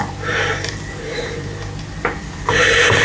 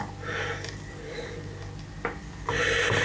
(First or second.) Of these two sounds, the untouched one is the second